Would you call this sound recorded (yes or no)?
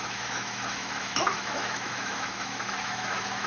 no